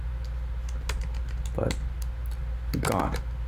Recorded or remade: recorded